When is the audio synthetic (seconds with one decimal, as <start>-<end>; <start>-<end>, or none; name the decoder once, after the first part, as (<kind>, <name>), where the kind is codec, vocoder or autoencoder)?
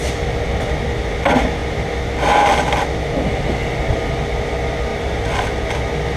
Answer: 4.9-5.7 (vocoder, BigVGAN v2)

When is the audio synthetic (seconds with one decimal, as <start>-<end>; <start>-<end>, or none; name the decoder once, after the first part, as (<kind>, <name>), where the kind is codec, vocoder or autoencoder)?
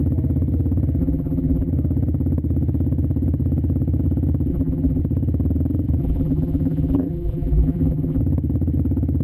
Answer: 1.0-1.7 (vocoder, BigVGAN v2); 4.5-5.0; 6.0-8.2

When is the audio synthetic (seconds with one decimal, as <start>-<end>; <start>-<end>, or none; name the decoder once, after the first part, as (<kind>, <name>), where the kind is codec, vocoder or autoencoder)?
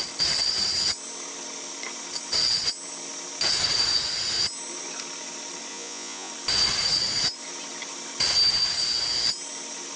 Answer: 5.7-6.3 (vocoder, Vocos)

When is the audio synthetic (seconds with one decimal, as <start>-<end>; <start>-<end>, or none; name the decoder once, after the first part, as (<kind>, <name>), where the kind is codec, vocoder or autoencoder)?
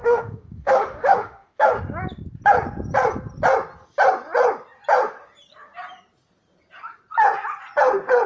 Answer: 0.0-1.7 (autoencoder, DAC-VAE)